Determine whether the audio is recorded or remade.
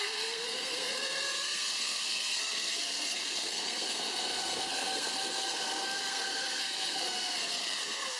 remade